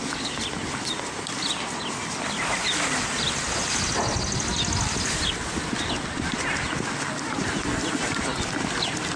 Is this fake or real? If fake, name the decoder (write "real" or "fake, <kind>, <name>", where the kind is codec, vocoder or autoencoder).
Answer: real